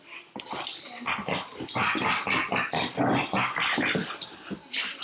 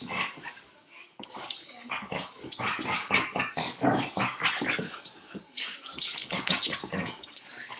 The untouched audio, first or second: first